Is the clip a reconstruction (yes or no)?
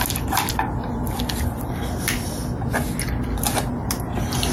no